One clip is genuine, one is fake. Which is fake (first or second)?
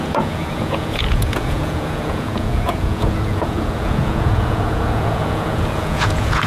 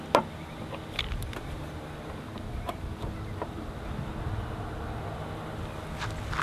first